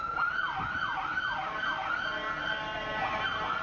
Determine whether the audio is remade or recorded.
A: recorded